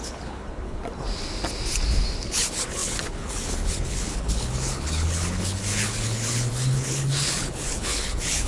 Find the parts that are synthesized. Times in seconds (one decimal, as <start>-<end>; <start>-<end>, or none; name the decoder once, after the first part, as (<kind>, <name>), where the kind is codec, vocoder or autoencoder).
0.0-0.8 (codec, HILCodec); 2.2-8.5